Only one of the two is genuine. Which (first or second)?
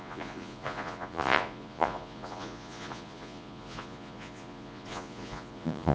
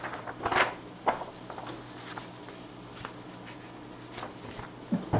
second